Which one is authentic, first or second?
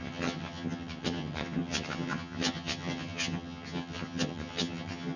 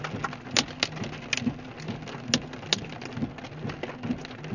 second